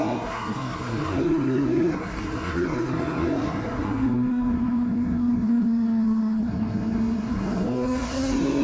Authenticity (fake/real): fake